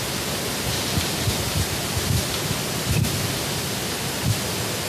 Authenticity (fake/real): real